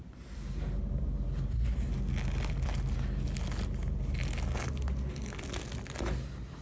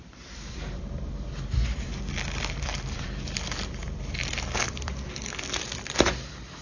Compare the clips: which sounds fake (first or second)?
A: second